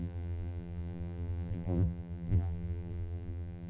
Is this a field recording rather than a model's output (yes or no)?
no